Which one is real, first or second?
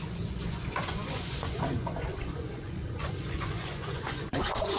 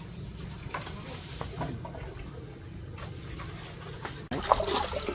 second